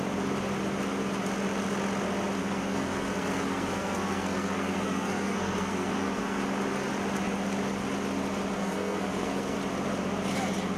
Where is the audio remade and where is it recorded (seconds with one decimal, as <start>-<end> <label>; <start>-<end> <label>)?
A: 0.0-2.4 recorded; 2.4-6.4 remade; 6.4-8.6 recorded; 8.6-9.6 remade; 9.6-10.8 recorded